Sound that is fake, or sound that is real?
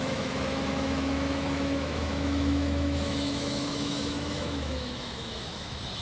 fake